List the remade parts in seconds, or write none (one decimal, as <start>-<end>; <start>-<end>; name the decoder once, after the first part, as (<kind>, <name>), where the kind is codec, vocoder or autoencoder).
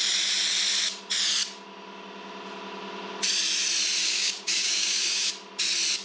4.0-5.3 (codec, DAC)